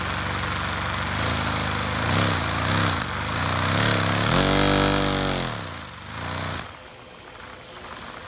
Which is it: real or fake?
real